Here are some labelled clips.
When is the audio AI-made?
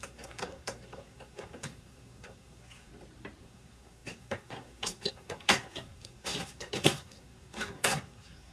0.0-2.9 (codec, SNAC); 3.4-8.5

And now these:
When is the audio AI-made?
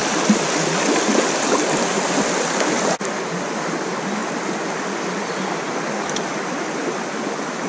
none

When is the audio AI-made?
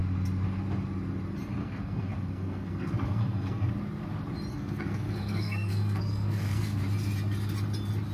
1.6-3.7 (codec, SNAC); 4.5-6.8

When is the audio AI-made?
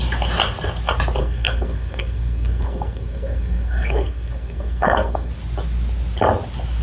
1.2-5.3 (codec, SNAC)